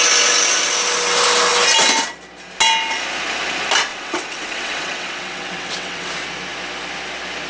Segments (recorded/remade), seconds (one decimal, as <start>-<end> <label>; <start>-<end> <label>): 0.0-3.9 recorded; 3.9-6.1 remade; 6.1-7.5 recorded